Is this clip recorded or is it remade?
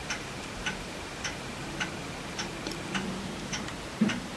remade